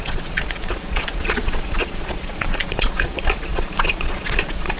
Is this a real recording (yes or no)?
no